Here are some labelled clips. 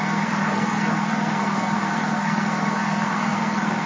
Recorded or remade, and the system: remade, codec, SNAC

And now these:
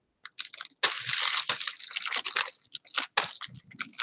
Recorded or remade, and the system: recorded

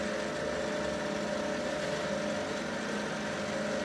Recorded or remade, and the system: recorded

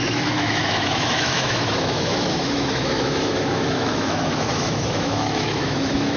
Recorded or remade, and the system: remade, autoencoder, DAC-VAE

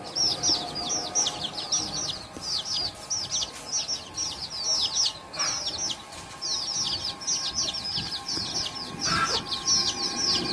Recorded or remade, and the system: recorded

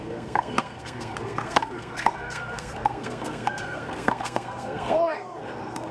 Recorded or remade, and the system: remade, codec, SNAC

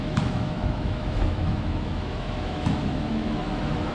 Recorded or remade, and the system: remade, autoencoder, DAC-VAE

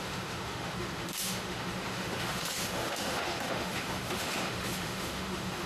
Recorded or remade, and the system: remade, autoencoder, DAC-VAE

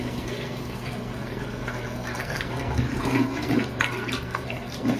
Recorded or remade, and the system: remade, codec, SNAC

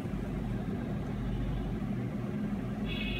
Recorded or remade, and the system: recorded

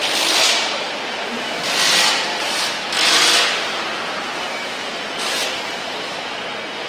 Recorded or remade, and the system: recorded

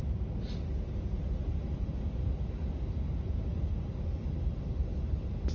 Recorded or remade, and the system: recorded